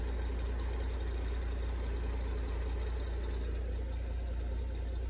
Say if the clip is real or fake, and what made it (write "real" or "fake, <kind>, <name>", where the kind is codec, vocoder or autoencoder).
real